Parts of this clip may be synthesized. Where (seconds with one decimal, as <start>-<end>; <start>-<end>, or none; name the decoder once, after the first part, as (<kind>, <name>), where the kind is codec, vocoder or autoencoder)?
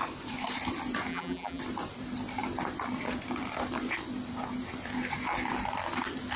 1.1-1.6 (vocoder, BigVGAN v2)